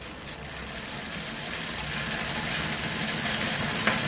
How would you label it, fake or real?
real